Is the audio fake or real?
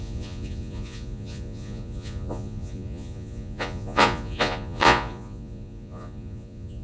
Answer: fake